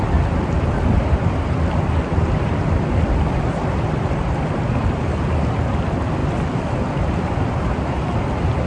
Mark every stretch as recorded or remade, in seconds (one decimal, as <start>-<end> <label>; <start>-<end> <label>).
0.0-8.7 recorded